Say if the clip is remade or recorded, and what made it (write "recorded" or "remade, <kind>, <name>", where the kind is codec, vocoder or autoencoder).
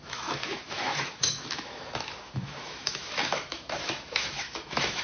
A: remade, autoencoder, DAC-VAE